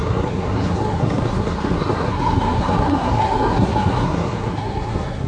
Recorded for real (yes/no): no